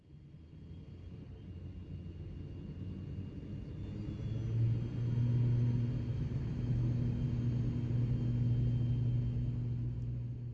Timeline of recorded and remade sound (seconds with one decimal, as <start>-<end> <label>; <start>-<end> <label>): 0.0-6.1 recorded; 6.1-7.2 remade; 7.2-10.5 recorded